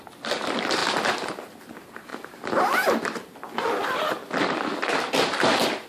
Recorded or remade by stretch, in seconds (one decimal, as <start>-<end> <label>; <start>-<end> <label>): 0.0-5.9 recorded